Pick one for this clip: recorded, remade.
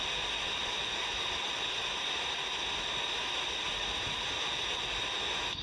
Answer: recorded